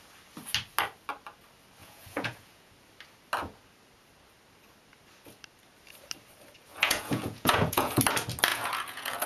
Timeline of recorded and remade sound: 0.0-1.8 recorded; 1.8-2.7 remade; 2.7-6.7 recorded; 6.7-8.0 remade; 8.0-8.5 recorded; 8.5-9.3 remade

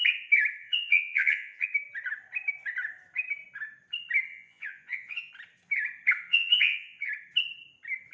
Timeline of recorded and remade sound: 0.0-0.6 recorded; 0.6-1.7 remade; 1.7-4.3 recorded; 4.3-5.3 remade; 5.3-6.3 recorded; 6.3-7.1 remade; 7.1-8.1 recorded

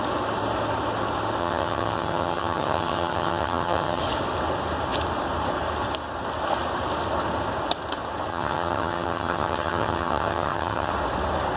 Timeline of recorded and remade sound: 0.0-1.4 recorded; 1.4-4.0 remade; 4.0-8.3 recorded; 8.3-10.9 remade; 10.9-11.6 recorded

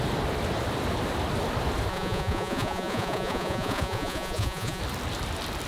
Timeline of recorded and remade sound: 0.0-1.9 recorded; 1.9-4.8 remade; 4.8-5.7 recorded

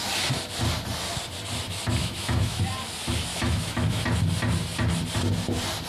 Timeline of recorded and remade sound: 0.0-2.0 recorded; 2.0-2.6 remade; 2.6-3.3 recorded; 3.3-4.0 remade; 4.0-5.9 recorded

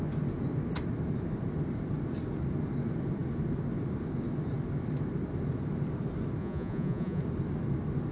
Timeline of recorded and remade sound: 0.0-6.4 recorded; 6.4-7.2 remade; 7.2-8.1 recorded

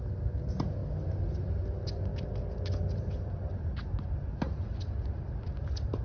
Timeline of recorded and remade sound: 0.0-6.0 recorded